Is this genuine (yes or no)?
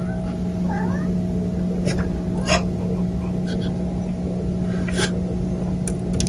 yes